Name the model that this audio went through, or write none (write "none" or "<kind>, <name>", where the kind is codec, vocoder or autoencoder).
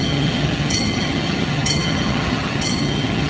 vocoder, HiFi-GAN